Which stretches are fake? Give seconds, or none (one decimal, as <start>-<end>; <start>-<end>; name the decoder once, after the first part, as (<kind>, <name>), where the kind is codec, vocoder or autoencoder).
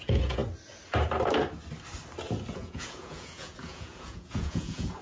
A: 0.0-0.4 (vocoder, Vocos); 2.5-5.0